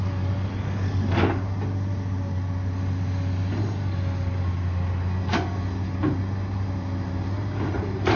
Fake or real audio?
real